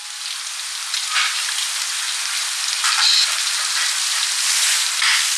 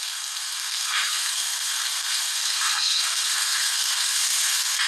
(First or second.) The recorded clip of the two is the first